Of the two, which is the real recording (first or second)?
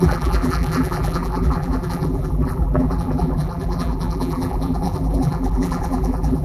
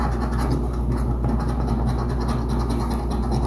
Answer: second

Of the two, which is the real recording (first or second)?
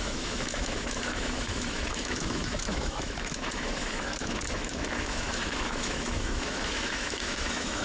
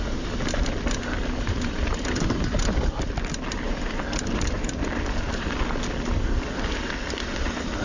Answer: second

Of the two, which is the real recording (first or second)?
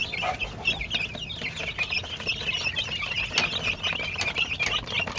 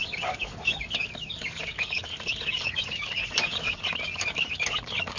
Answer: first